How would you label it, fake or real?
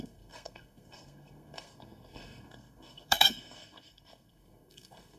fake